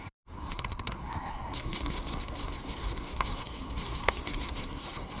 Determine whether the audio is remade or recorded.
remade